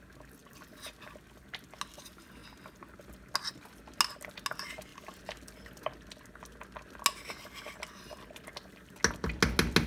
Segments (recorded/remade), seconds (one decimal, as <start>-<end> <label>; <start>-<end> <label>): 0.0-9.9 recorded